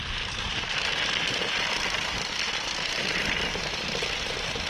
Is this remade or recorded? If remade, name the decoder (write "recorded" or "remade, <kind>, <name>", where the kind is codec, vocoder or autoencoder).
recorded